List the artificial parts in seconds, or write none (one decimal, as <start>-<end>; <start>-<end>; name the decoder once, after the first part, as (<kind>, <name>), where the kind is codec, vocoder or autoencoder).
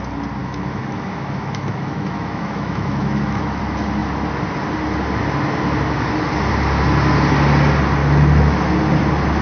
0.4-3.6 (autoencoder, DAC-VAE); 8.0-8.7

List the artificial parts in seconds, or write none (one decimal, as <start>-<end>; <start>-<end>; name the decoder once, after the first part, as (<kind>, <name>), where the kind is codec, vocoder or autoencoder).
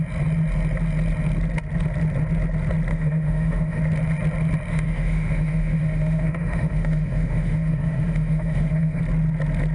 2.9-3.8 (autoencoder, DAC-VAE); 4.7-9.0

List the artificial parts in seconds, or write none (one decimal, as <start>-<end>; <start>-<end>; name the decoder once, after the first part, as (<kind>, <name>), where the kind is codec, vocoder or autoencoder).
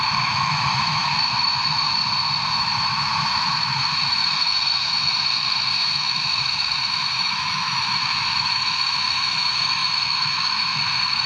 0.0-2.0 (autoencoder, DAC-VAE); 2.6-11.3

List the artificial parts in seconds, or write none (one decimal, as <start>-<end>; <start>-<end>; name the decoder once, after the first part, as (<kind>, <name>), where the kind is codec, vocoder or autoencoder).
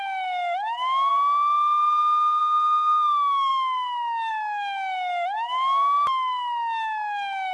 0.0-1.1 (autoencoder, DAC-VAE); 2.4-7.5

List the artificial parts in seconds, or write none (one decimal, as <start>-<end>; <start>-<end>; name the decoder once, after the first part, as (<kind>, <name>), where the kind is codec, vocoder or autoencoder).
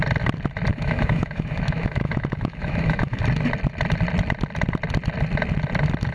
0.7-3.2 (autoencoder, DAC-VAE)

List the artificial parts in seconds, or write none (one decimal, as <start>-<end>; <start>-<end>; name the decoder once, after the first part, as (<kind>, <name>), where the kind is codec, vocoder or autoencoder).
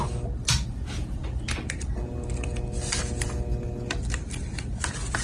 none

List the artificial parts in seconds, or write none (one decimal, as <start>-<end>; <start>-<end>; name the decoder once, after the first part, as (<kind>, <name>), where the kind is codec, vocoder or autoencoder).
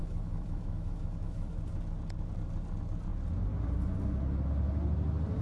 0.0-1.6 (autoencoder, DAC-VAE)